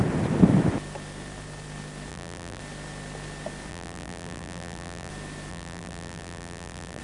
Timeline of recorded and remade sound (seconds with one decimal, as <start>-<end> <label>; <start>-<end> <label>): 0.0-2.1 recorded; 2.1-2.6 remade; 2.6-3.7 recorded; 3.7-5.1 remade; 5.1-5.5 recorded; 5.5-7.0 remade